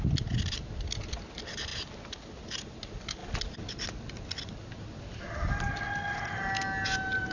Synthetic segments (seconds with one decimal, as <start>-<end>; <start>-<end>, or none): none